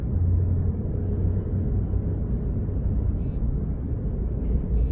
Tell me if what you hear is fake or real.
real